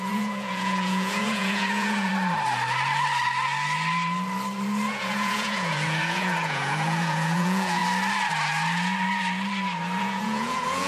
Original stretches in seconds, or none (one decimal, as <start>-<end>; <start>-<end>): 2.1-4.9; 7.8-10.0